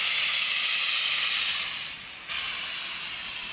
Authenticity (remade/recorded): recorded